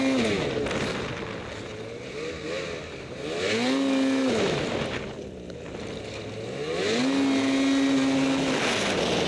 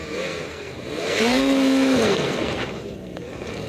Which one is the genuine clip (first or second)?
first